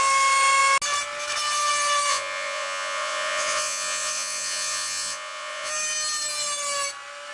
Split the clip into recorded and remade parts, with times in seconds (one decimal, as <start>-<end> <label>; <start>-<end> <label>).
0.0-2.1 recorded; 2.1-5.7 remade; 5.7-7.3 recorded